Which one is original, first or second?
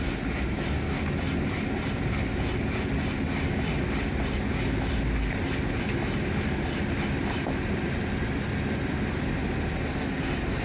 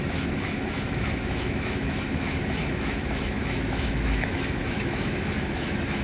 first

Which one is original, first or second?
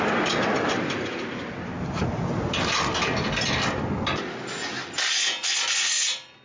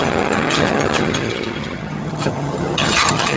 first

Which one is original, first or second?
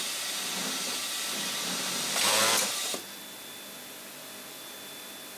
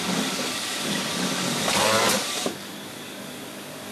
first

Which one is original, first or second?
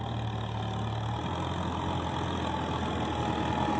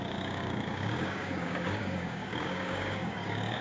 first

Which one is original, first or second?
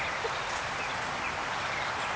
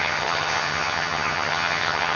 first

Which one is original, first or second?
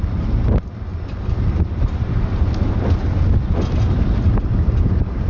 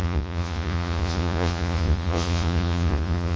first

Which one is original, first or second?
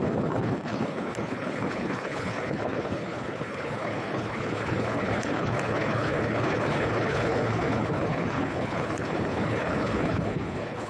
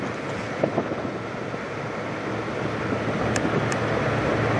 second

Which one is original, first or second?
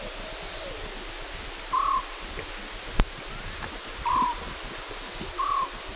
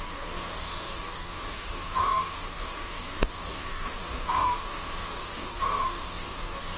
first